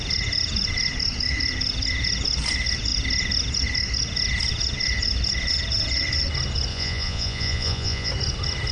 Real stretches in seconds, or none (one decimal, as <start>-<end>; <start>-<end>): 0.0-6.7; 8.1-8.7